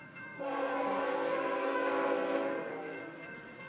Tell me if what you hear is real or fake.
fake